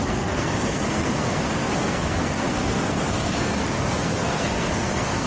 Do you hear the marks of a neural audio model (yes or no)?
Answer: yes